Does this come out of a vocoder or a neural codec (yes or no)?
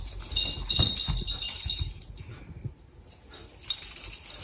no